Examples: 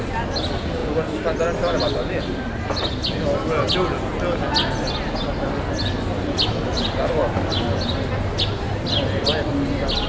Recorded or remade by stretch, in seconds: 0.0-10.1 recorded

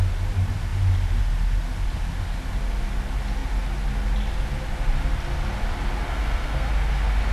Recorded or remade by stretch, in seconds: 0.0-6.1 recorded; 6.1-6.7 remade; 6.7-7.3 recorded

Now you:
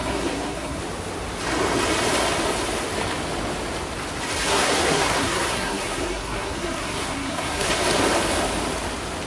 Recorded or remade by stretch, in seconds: 0.0-0.8 remade; 0.8-4.4 recorded; 4.4-7.7 remade; 7.7-9.3 recorded